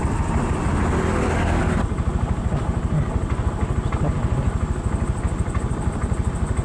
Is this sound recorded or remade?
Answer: recorded